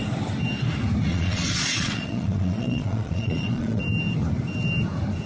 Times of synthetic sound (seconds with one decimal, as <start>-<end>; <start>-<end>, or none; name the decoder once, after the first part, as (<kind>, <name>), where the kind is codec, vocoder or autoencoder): 1.1-3.8 (vocoder, Vocos)